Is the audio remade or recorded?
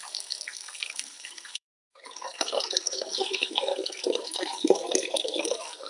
remade